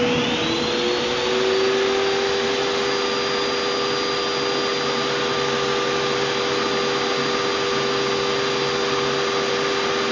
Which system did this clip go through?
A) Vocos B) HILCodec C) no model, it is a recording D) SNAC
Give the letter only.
C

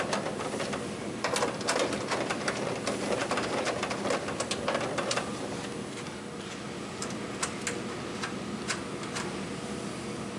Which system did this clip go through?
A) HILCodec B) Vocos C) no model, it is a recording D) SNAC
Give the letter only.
C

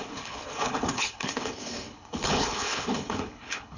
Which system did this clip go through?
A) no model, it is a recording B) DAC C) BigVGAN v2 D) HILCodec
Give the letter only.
D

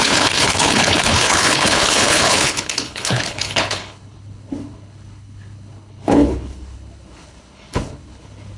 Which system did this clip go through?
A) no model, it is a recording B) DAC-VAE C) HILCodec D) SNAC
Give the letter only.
C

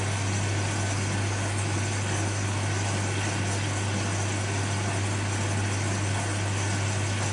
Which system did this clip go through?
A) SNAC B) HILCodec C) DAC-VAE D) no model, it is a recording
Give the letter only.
D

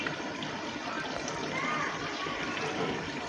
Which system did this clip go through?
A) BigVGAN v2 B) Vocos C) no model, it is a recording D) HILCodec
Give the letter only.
C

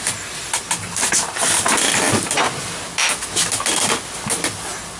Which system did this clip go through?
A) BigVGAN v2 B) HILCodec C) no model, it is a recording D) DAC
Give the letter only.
C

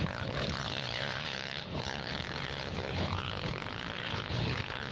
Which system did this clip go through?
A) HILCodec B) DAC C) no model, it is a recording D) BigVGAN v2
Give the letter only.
A